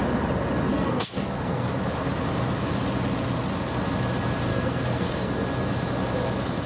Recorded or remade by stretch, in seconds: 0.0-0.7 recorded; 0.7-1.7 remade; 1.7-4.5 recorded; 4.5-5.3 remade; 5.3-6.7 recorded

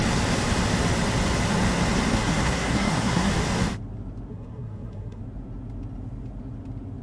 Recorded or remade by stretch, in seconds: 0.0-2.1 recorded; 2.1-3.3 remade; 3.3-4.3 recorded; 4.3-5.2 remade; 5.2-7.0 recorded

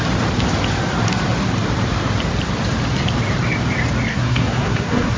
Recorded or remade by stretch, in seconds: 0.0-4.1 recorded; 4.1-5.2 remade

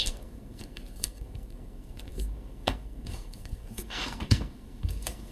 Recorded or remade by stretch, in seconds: 0.0-5.3 remade

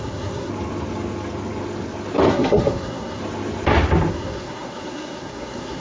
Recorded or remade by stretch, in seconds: 0.0-0.5 remade; 0.5-2.3 recorded; 2.3-3.2 remade; 3.2-4.1 recorded; 4.1-5.8 remade

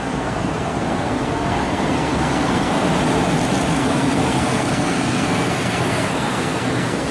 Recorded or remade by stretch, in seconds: 0.0-2.9 remade; 2.9-3.7 recorded; 3.7-7.1 remade

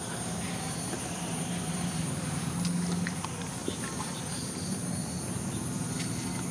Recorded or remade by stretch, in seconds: 0.0-6.5 recorded

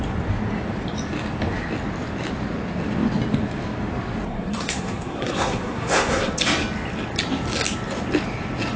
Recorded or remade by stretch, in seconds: 0.0-4.3 recorded; 4.3-6.3 remade; 6.3-8.8 recorded